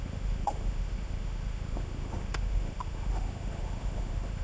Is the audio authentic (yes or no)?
no